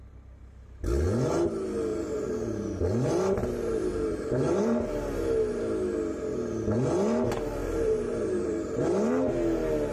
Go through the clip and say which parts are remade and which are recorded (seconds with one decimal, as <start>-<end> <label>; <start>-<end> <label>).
0.0-1.9 recorded; 1.9-2.8 remade; 2.8-3.4 recorded; 3.4-4.8 remade; 4.8-7.6 recorded; 7.6-8.8 remade; 8.8-9.9 recorded